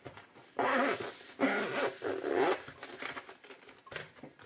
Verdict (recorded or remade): recorded